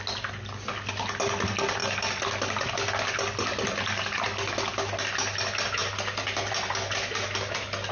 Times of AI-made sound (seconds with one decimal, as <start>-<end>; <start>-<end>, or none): none